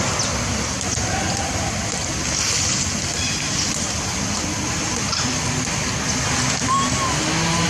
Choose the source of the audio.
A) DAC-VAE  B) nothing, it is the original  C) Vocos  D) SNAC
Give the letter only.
B